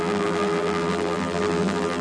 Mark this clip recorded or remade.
remade